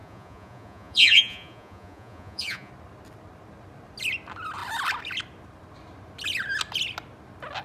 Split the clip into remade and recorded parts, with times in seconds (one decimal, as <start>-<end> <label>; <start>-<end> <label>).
0.0-2.7 remade; 2.7-7.6 recorded